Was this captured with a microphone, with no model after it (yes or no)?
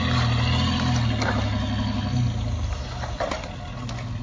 yes